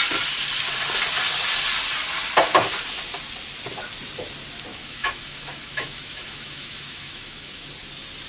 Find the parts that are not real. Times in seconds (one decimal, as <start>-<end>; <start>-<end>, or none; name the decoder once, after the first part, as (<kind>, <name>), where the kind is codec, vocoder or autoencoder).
4.7-7.7 (autoencoder, DAC-VAE)